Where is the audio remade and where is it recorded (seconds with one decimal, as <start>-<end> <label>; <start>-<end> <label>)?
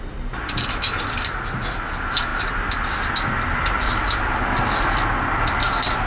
0.0-6.1 recorded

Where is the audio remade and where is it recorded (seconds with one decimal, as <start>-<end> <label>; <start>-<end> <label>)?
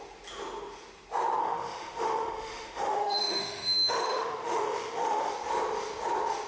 0.0-1.4 recorded; 1.4-5.3 remade; 5.3-6.5 recorded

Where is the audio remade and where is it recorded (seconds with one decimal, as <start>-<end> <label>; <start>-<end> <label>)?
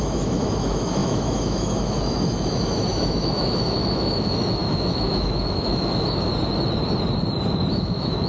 0.0-6.3 remade; 6.3-7.7 recorded; 7.7-8.3 remade